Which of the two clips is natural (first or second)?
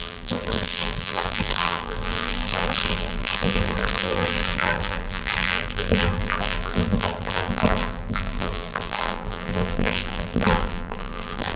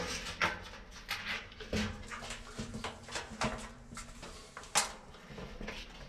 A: second